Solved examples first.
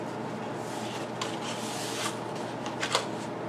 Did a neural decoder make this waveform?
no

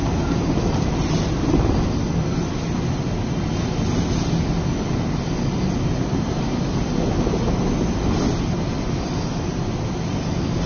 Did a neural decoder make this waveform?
no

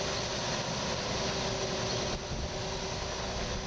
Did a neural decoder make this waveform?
no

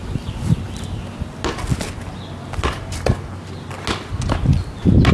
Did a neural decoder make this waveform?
no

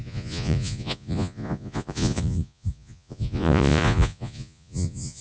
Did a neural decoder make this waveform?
yes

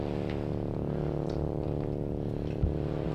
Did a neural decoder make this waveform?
no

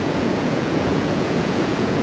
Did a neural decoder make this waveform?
yes